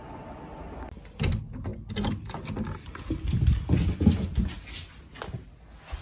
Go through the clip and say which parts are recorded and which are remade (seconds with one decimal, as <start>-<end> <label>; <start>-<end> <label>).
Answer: 0.0-6.0 recorded

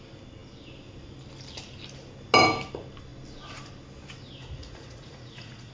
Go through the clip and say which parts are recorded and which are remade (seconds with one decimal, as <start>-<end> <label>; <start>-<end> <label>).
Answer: 0.0-4.4 recorded; 4.4-5.7 remade

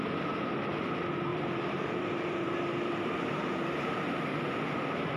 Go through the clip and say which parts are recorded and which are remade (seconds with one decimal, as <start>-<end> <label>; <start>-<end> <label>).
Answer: 0.0-1.3 recorded; 1.3-4.4 remade; 4.4-5.2 recorded

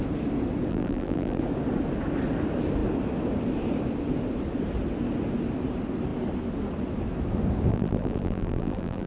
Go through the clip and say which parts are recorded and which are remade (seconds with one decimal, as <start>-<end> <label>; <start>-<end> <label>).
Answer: 0.0-0.7 recorded; 0.7-1.4 remade; 1.4-7.7 recorded; 7.7-9.1 remade

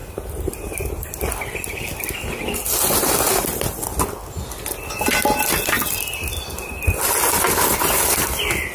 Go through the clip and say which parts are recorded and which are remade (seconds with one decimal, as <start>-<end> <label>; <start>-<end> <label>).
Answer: 0.0-1.1 remade; 1.1-8.7 recorded

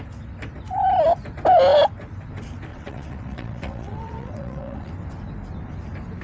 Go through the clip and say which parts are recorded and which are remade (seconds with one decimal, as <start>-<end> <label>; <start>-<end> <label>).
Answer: 0.0-2.7 recorded; 2.7-4.9 remade; 4.9-6.2 recorded

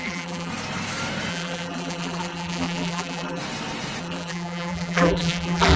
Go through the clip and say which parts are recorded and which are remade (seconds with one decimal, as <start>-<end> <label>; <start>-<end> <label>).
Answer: 0.0-0.5 remade; 0.5-1.3 recorded; 1.3-3.4 remade; 3.4-4.0 recorded; 4.0-5.8 remade

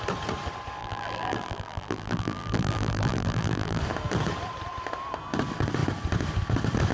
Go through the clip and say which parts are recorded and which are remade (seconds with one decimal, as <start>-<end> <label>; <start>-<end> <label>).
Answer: 0.0-0.8 recorded; 0.8-3.8 remade; 3.8-6.9 recorded